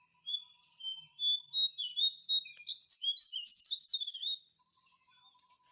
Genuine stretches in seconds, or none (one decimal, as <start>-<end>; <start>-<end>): 0.0-2.9; 4.4-5.7